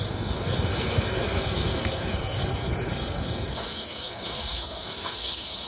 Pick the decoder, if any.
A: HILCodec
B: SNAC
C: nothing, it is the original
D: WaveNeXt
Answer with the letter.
B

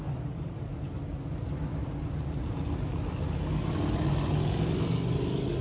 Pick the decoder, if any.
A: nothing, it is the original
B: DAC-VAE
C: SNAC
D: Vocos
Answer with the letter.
A